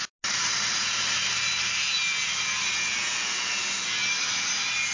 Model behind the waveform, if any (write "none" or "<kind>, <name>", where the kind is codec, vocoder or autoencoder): none